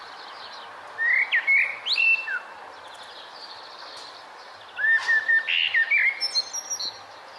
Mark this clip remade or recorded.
recorded